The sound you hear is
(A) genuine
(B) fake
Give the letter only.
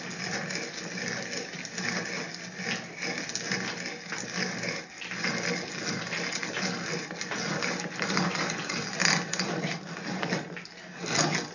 A